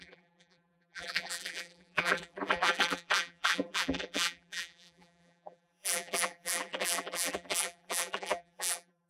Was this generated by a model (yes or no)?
yes